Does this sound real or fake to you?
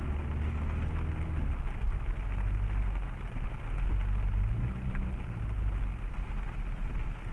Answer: real